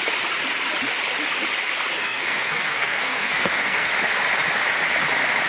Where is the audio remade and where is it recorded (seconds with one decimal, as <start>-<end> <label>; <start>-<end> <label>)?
0.0-2.0 recorded; 2.0-3.9 remade; 3.9-5.5 recorded